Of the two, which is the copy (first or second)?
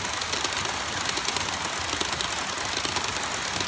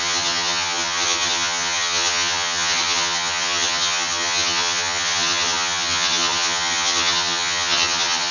second